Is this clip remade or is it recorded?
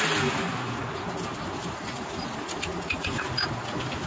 recorded